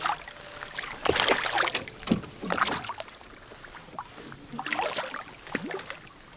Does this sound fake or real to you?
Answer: real